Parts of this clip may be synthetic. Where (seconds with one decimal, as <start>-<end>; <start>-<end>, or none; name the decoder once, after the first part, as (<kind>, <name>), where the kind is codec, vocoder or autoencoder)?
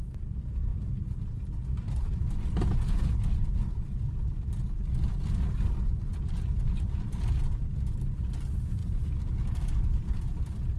0.7-2.2 (vocoder, BigVGAN v2); 6.1-6.9